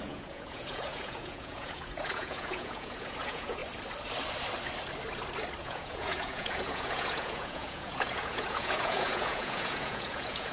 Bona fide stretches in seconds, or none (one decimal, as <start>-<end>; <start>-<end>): 3.6-5.6